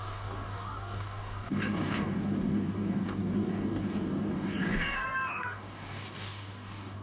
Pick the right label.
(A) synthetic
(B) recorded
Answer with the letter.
A